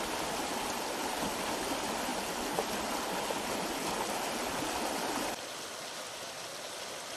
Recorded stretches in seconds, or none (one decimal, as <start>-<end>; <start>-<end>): 0.0-7.2